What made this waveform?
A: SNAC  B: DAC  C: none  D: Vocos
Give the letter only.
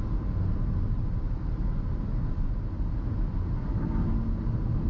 C